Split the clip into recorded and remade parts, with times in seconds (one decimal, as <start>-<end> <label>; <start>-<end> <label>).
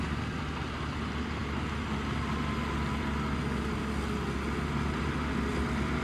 0.0-6.0 recorded